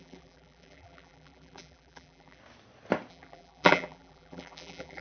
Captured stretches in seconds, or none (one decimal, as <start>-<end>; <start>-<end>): 2.4-3.1